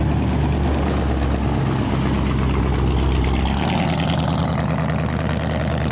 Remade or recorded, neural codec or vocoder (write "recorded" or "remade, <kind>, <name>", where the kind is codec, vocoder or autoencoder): recorded